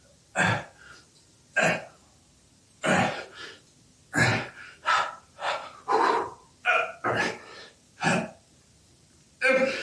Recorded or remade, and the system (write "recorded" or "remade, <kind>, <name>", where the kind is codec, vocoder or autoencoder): recorded